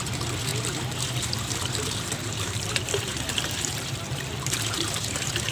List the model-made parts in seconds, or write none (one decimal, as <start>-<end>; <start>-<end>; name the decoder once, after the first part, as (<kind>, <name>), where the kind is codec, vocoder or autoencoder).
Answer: 0.0-5.5 (vocoder, BigVGAN v2)

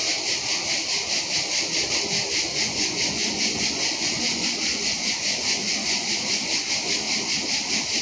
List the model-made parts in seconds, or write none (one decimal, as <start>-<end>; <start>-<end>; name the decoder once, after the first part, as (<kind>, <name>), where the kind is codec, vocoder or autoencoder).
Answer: 2.5-6.7 (vocoder, Vocos)

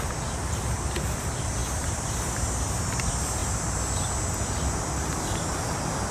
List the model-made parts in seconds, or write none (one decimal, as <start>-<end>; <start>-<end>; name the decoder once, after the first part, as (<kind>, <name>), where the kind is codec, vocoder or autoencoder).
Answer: none